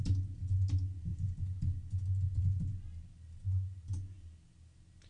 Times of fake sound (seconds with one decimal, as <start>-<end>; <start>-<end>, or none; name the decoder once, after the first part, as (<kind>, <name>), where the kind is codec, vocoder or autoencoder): none